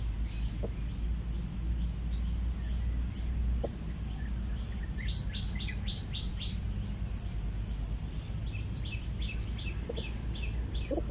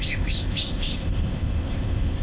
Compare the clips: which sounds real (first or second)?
first